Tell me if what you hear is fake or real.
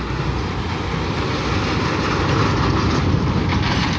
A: real